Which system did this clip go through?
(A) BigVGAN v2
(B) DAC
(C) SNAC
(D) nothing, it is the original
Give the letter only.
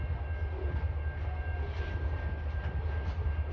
D